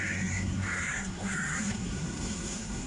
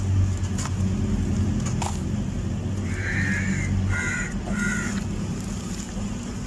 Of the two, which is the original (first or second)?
second